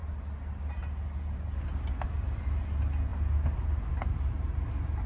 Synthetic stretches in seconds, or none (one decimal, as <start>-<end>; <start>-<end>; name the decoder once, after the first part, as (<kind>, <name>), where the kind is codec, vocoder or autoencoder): none